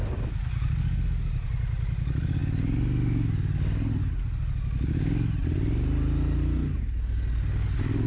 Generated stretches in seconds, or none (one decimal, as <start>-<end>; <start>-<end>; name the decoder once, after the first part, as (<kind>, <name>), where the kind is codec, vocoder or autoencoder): none